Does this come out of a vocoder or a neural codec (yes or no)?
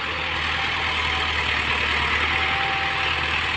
no